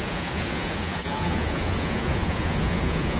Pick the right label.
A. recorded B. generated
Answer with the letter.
B